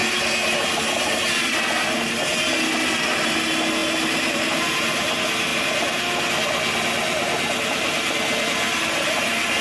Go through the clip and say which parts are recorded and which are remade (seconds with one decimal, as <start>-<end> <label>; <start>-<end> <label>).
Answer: 0.0-9.6 recorded